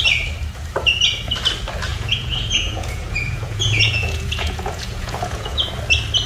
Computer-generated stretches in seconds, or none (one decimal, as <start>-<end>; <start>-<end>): 1.9-5.7